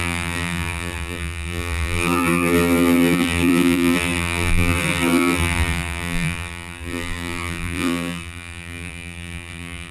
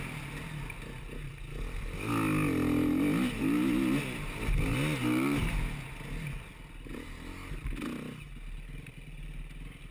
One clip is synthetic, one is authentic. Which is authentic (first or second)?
second